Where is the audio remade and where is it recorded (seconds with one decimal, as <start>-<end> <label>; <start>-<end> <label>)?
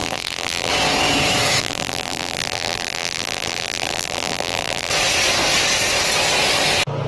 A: 0.0-0.7 remade; 0.7-1.6 recorded; 1.6-4.9 remade; 4.9-7.1 recorded